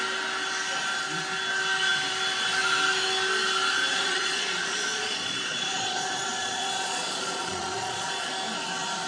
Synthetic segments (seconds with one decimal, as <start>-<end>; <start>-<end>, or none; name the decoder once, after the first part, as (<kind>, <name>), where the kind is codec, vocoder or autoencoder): 3.9-8.3 (vocoder, Vocos)